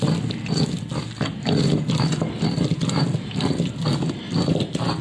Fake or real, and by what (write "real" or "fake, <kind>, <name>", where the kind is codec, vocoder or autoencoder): real